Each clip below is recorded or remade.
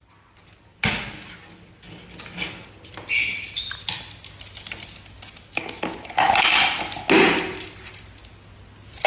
recorded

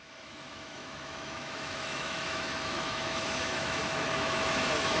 remade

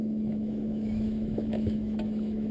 remade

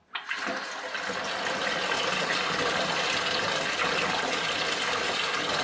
recorded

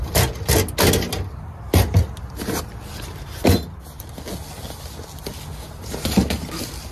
recorded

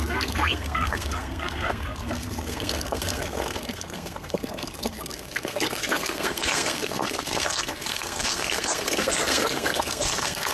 remade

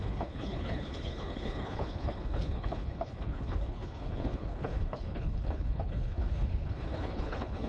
remade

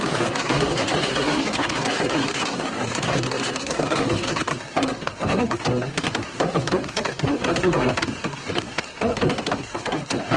remade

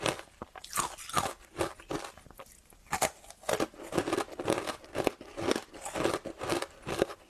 recorded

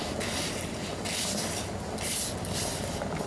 recorded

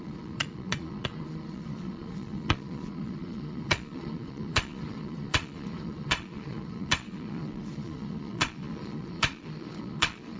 remade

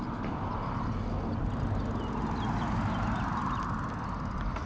recorded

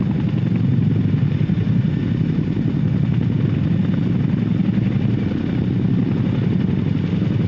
recorded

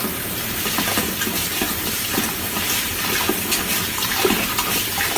recorded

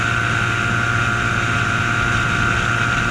recorded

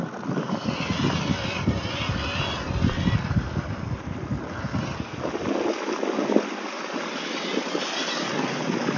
recorded